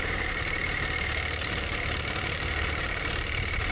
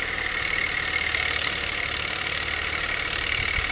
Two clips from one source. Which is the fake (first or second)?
first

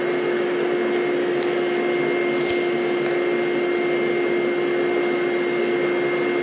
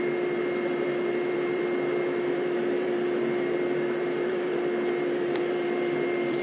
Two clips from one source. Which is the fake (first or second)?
second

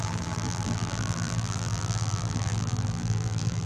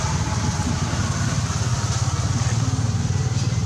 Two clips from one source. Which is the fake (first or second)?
first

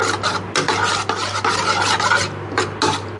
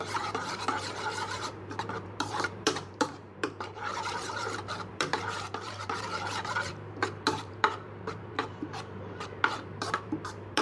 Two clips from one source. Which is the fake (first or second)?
second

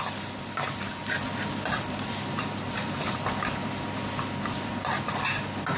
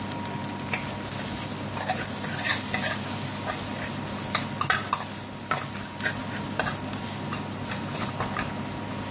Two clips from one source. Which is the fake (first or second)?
first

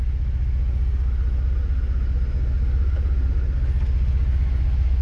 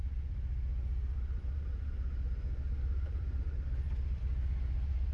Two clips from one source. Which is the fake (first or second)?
second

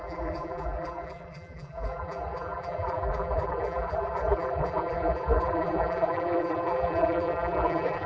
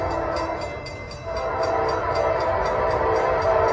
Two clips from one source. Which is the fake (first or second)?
first